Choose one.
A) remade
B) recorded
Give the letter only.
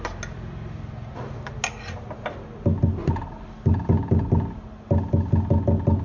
B